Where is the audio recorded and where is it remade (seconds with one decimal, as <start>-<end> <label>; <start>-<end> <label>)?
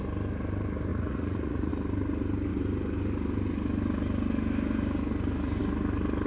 0.0-0.9 recorded; 0.9-1.7 remade; 1.7-6.3 recorded